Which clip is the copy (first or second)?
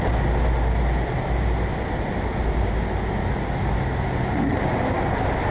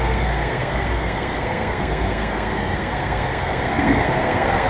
second